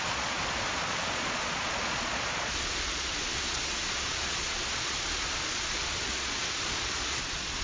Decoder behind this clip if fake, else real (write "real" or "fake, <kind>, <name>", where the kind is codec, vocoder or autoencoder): fake, vocoder, Vocos